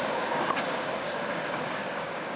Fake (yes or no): yes